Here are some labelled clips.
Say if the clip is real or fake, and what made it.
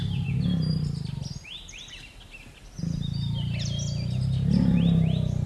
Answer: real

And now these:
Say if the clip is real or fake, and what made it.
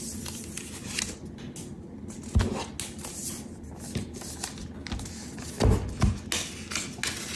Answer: real